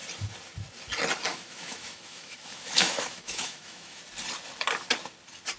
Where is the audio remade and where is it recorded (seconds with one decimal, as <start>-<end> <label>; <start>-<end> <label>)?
0.0-1.3 recorded; 1.3-4.0 remade; 4.0-5.6 recorded